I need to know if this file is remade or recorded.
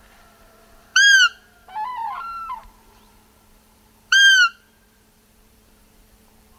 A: remade